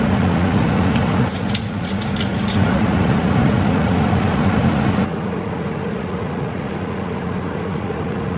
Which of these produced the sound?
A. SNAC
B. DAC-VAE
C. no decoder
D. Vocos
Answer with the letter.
D